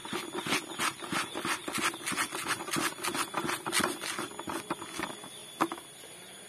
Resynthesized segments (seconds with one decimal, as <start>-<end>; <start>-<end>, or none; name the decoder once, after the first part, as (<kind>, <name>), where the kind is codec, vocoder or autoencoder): none

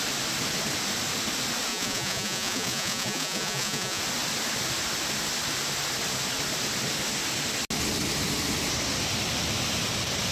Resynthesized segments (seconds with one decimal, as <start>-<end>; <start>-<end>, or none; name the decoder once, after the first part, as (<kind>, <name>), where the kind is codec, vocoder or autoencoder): 1.7-4.0 (vocoder, Vocos)

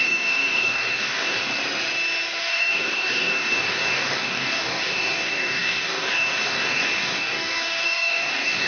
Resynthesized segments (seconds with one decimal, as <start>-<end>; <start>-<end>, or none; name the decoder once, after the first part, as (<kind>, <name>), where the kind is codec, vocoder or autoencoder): 0.0-1.4 (codec, DAC); 2.4-8.7

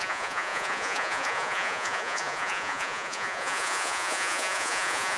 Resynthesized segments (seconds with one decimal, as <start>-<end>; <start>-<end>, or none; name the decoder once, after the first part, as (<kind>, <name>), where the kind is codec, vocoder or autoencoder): 0.0-5.2 (vocoder, Vocos)

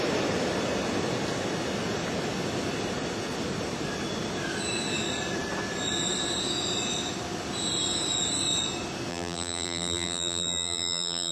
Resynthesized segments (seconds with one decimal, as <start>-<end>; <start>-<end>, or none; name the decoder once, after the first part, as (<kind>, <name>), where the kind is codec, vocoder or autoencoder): 9.1-11.3 (vocoder, BigVGAN v2)